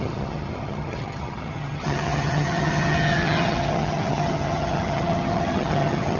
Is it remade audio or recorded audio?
remade